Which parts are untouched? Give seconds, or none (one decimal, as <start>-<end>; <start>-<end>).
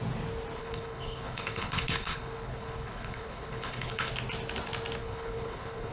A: 0.0-0.6; 4.1-5.0